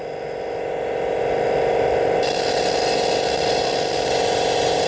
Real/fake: real